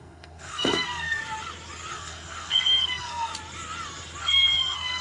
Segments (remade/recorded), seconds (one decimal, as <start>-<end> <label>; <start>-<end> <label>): 0.0-1.2 remade; 1.2-1.9 recorded; 1.9-3.3 remade; 3.3-4.2 recorded; 4.2-5.0 remade